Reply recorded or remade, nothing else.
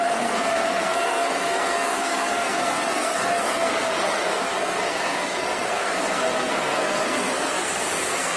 remade